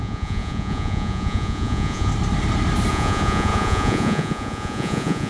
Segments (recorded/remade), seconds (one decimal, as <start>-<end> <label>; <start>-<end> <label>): 0.0-2.1 remade; 2.1-2.9 recorded; 2.9-5.3 remade